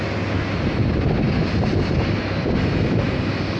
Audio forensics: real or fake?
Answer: real